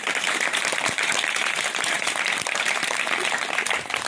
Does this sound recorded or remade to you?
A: remade